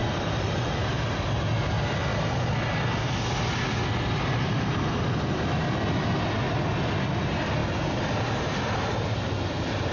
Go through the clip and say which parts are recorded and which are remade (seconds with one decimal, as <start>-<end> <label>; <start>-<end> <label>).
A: 0.0-9.9 recorded